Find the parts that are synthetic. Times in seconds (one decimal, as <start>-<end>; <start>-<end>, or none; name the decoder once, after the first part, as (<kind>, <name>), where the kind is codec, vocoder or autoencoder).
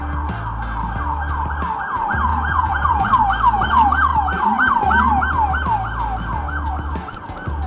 2.3-3.1 (vocoder, Vocos)